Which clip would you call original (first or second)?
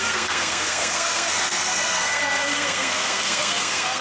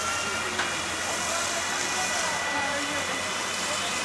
second